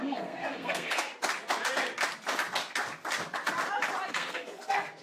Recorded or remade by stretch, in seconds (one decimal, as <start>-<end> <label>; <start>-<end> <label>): 0.0-1.1 remade; 1.1-4.1 recorded; 4.1-5.0 remade